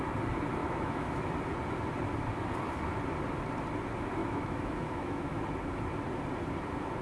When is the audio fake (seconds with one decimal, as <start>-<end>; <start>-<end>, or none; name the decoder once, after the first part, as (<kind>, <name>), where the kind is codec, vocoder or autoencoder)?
0.6-1.2 (autoencoder, DAC-VAE); 4.2-5.4

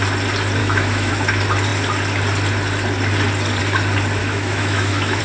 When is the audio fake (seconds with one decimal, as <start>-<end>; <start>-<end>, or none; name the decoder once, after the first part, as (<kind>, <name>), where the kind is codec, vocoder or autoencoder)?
0.6-1.1 (autoencoder, DAC-VAE); 4.2-5.2

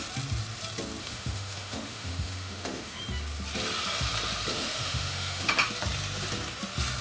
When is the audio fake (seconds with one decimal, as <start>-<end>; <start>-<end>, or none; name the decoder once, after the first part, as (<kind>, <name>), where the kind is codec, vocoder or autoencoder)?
1.0-3.0 (autoencoder, DAC-VAE); 4.5-5.5

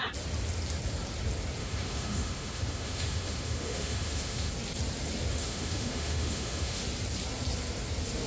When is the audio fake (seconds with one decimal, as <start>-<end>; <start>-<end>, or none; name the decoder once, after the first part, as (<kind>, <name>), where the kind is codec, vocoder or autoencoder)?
1.6-4.5 (autoencoder, DAC-VAE); 5.3-6.8

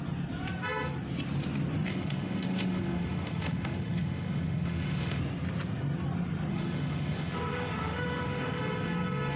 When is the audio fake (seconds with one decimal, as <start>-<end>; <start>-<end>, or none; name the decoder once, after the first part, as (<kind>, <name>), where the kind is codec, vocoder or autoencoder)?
1.9-5.2 (autoencoder, DAC-VAE); 6.5-8.6

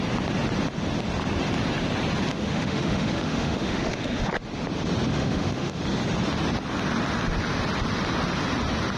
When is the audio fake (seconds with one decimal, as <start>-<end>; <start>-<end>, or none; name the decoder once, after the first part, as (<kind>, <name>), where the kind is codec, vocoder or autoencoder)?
2.3-4.3 (autoencoder, DAC-VAE); 5.1-5.8

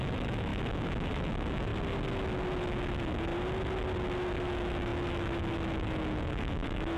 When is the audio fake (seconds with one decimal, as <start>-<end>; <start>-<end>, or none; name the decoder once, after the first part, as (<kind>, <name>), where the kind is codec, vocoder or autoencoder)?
0.0-1.7 (autoencoder, DAC-VAE); 2.6-3.3; 4.3-7.0

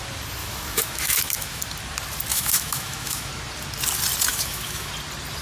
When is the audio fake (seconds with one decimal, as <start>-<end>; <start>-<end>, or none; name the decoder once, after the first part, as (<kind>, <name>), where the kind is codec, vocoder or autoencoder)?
0.4-1.6 (autoencoder, DAC-VAE); 2.3-3.3; 4.3-4.9